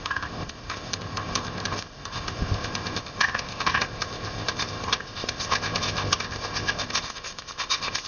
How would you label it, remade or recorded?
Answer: remade